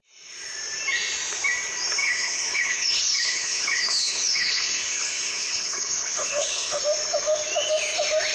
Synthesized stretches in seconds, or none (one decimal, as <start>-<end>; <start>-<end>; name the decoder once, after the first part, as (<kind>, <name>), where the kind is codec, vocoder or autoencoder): 2.0-6.8 (codec, HILCodec)